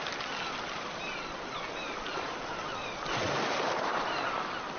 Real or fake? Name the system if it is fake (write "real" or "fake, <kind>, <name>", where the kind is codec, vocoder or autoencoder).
fake, vocoder, BigVGAN v2